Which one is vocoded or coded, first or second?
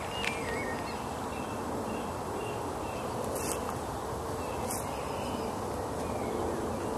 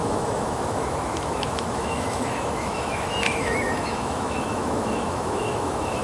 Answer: second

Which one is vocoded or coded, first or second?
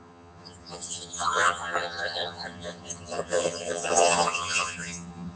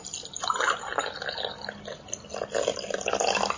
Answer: first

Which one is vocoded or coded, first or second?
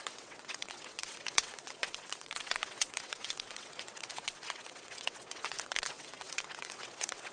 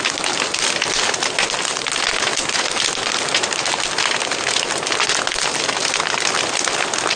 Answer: first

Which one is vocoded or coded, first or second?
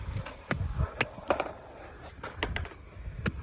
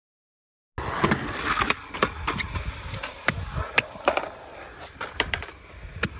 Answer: first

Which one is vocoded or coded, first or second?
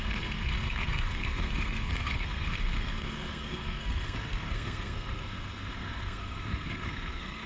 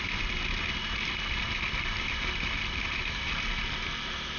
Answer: first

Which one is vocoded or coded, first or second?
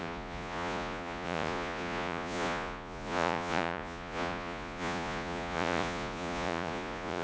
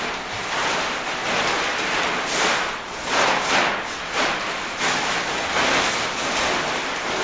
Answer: first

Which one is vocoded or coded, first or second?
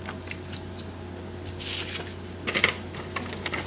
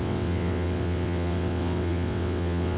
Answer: second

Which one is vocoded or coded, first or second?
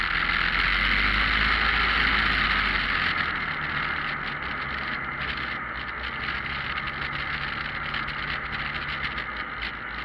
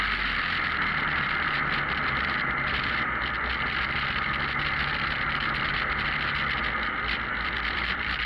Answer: second